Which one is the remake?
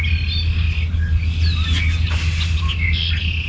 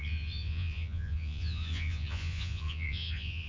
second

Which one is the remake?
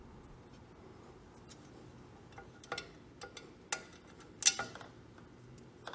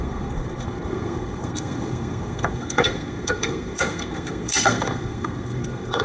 second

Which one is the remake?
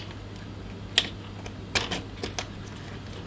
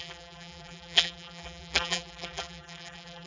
second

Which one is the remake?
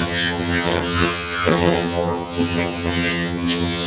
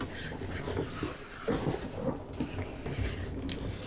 first